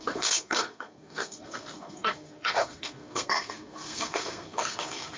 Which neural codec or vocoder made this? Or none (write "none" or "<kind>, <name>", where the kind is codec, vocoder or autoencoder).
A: codec, SNAC